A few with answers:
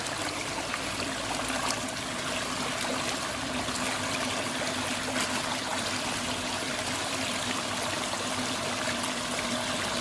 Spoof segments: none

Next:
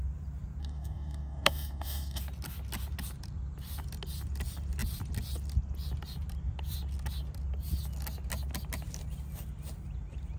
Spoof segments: 0.6-2.2 (codec, DAC)

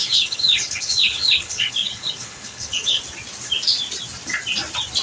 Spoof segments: 0.0-3.0 (codec, HILCodec)

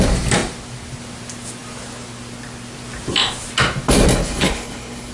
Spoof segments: 4.2-5.1 (codec, HILCodec)